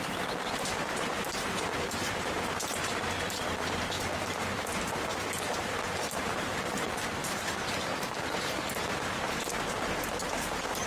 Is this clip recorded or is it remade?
remade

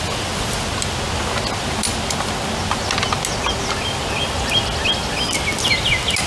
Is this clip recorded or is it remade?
recorded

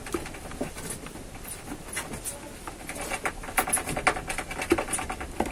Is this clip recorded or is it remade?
recorded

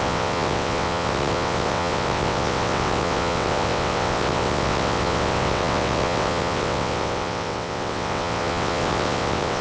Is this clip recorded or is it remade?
remade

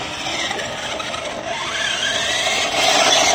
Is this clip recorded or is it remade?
recorded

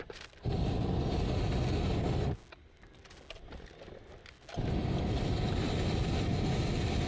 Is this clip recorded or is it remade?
recorded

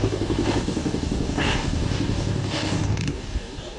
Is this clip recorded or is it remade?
remade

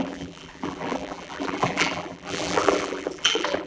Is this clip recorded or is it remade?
remade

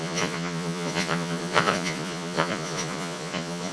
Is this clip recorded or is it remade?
remade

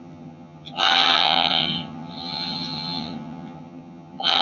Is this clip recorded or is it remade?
remade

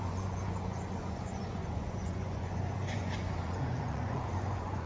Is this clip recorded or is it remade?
remade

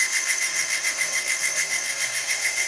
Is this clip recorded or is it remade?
remade